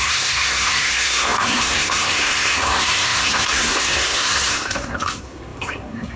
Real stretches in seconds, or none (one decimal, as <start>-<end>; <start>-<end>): none